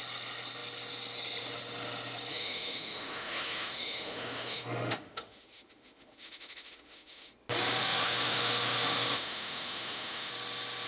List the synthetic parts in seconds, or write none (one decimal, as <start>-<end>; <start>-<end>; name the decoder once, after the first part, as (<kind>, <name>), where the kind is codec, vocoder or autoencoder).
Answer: 2.3-7.3 (autoencoder, DAC-VAE); 7.8-10.3